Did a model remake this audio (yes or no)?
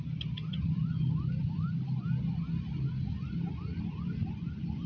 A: no